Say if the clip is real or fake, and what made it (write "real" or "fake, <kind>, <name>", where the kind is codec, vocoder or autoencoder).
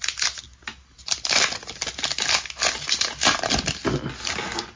real